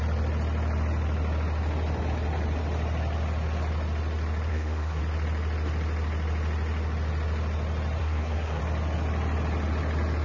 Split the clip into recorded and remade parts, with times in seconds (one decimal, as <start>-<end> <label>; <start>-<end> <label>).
0.0-4.5 recorded; 4.5-5.0 remade; 5.0-8.0 recorded; 8.0-8.6 remade; 8.6-10.2 recorded